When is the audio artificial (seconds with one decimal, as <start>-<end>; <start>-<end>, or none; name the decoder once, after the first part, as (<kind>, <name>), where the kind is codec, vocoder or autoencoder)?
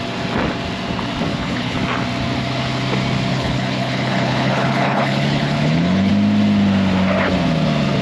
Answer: 1.3-1.8 (codec, HILCodec); 3.3-6.1